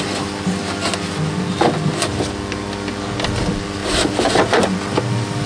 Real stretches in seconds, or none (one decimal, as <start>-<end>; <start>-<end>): 0.0-5.5